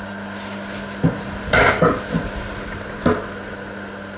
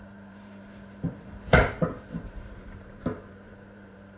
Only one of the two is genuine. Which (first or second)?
first